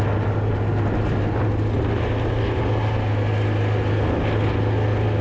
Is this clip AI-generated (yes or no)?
no